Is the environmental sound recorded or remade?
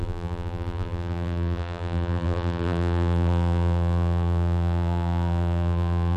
remade